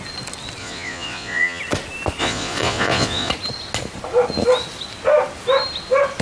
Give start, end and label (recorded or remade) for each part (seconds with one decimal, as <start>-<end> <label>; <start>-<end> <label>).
0.0-0.6 recorded; 0.6-1.6 remade; 1.6-2.2 recorded; 2.2-3.3 remade; 3.3-6.2 recorded